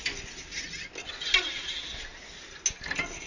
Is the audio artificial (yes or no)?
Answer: no